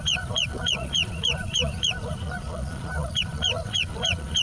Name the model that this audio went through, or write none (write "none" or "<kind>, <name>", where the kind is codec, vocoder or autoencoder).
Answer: vocoder, Vocos